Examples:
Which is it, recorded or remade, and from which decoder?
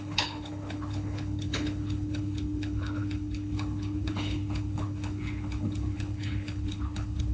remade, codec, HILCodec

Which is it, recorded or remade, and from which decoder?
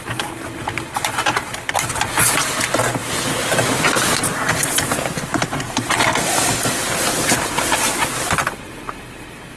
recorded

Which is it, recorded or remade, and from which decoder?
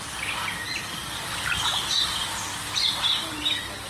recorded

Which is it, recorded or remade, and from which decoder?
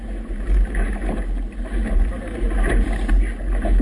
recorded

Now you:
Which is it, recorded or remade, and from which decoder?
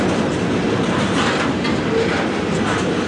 recorded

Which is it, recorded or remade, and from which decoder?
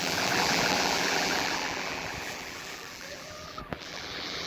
remade, vocoder, BigVGAN v2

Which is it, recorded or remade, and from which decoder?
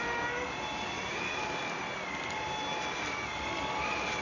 recorded